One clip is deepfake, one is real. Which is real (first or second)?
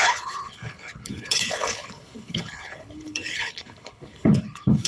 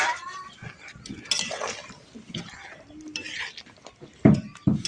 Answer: second